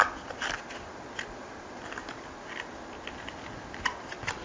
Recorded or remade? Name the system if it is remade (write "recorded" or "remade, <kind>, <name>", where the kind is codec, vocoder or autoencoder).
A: recorded